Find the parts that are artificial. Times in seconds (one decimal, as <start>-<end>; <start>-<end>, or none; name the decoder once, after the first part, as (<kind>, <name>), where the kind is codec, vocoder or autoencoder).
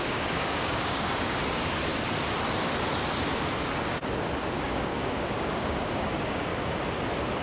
0.0-1.9 (codec, DAC); 4.5-6.5